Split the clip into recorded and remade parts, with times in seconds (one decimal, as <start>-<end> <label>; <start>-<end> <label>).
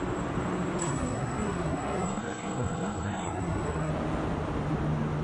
0.0-0.8 recorded; 0.8-3.9 remade; 3.9-5.2 recorded